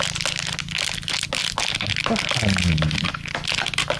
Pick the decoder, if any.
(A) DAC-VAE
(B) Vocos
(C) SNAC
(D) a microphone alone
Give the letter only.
D